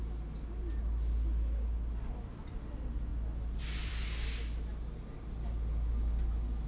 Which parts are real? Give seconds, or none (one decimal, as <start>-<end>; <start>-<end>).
0.0-6.7